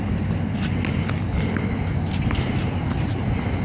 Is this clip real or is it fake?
real